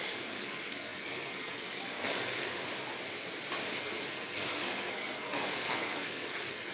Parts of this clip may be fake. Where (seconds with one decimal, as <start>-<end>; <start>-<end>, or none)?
0.0-2.6; 3.8-6.7